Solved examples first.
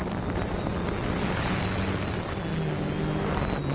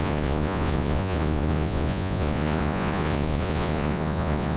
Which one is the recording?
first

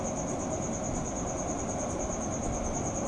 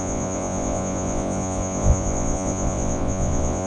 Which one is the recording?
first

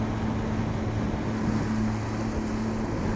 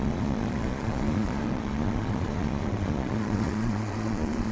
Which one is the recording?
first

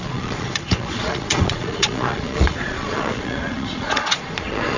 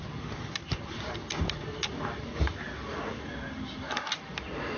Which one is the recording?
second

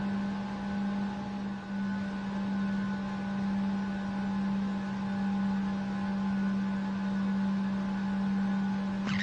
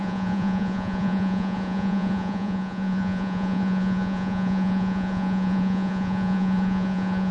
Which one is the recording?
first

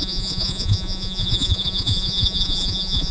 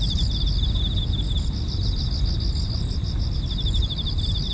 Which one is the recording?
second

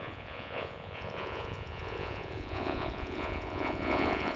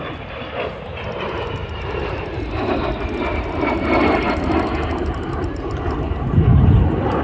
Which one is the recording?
second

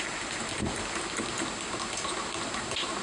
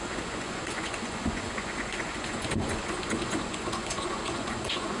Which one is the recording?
first